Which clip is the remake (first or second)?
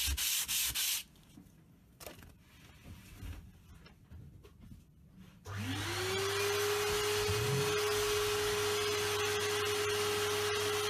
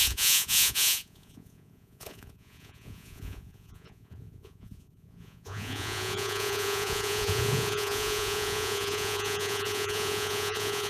second